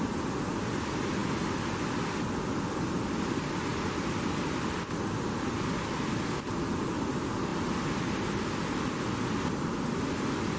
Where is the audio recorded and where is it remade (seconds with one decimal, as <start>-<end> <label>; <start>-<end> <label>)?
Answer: 0.0-10.6 recorded